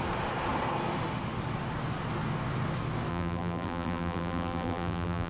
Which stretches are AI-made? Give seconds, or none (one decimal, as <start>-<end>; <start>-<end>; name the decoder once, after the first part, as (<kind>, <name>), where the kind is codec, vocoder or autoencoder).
3.1-5.3 (vocoder, BigVGAN v2)

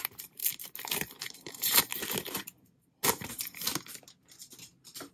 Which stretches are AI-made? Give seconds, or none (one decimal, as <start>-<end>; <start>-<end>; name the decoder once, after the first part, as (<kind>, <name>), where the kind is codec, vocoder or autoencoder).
0.0-0.4 (vocoder, BigVGAN v2); 1.3-1.9

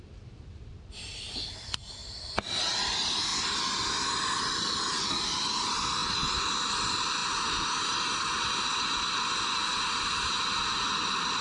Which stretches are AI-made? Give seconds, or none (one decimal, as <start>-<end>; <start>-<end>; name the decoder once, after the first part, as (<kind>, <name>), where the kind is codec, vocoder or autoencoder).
0.0-2.0 (vocoder, BigVGAN v2); 2.7-6.0; 6.7-7.2; 8.7-11.4

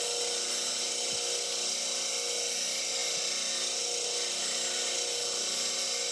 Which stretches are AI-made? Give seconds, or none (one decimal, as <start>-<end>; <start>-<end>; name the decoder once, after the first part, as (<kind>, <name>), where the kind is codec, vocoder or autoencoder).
none

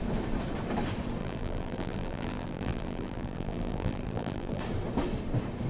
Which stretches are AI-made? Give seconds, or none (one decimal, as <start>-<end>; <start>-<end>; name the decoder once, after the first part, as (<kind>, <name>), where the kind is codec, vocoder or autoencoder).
1.2-4.6 (vocoder, BigVGAN v2)

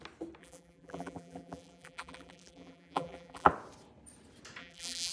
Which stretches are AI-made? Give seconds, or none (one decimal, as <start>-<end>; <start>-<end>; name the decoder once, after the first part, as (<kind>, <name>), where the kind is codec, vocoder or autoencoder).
0.4-3.5 (vocoder, BigVGAN v2); 4.6-5.1

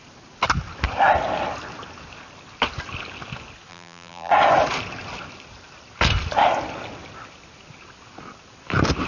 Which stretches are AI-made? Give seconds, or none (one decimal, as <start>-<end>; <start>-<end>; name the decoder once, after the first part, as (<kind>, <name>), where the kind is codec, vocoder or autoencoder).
3.7-4.3 (vocoder, BigVGAN v2)

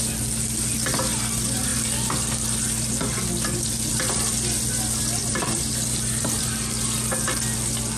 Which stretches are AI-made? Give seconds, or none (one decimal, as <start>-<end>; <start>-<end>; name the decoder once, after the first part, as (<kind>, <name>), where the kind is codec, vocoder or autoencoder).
5.2-6.4 (vocoder, BigVGAN v2)